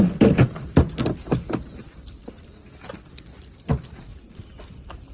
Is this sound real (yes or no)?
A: yes